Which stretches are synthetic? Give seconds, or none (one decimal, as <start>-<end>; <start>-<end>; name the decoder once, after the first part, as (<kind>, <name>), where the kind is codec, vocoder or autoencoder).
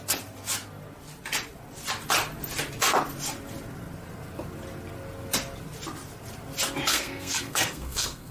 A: 6.9-8.3 (codec, SNAC)